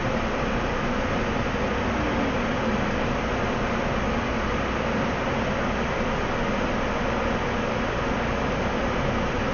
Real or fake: real